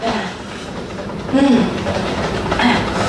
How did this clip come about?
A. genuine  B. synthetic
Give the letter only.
B